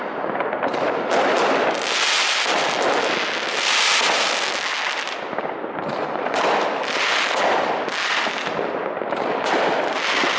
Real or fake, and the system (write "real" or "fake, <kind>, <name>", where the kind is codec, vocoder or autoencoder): real